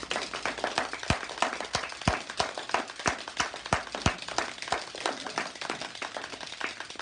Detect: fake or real real